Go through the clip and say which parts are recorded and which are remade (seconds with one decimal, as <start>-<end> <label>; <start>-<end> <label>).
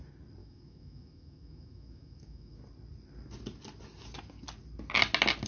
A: 0.0-0.4 recorded; 0.4-2.6 remade; 2.6-5.5 recorded